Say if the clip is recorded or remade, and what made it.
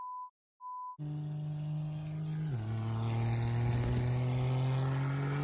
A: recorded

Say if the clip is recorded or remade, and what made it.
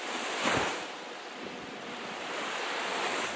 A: recorded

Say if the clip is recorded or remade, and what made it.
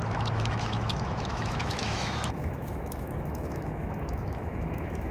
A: remade, autoencoder, DAC-VAE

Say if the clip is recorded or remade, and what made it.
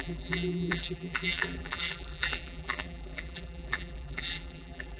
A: remade, vocoder, BigVGAN v2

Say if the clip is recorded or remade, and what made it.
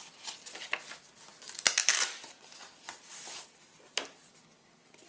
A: recorded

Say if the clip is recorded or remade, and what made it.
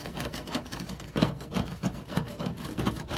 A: remade, codec, SNAC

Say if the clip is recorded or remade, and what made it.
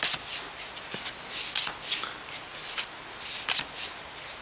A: recorded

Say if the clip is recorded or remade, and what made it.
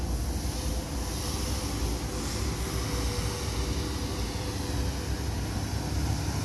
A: recorded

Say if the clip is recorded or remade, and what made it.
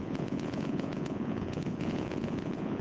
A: remade, vocoder, Vocos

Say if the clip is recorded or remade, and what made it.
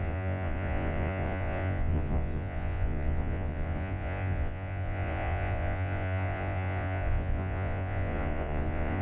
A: remade, vocoder, Vocos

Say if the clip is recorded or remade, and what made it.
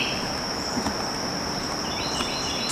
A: remade, vocoder, BigVGAN v2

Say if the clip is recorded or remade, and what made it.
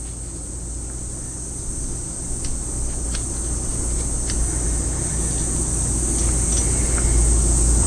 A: recorded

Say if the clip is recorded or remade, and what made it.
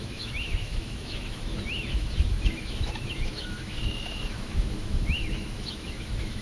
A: remade, autoencoder, DAC-VAE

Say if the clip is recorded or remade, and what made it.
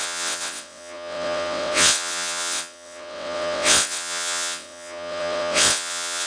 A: remade, vocoder, WaveNeXt